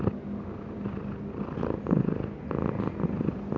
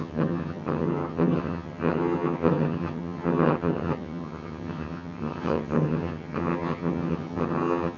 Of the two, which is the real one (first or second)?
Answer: first